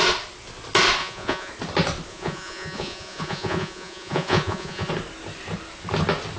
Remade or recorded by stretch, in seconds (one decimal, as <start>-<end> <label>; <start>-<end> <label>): 0.0-1.0 recorded; 1.0-1.5 remade; 1.5-2.1 recorded; 2.1-4.9 remade; 4.9-6.4 recorded